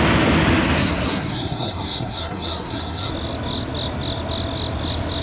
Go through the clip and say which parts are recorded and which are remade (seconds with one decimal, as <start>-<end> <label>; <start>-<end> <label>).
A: 0.0-0.8 recorded; 0.8-3.1 remade; 3.1-5.2 recorded